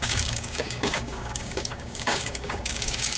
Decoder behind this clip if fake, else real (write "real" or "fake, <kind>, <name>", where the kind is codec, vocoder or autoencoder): fake, codec, DAC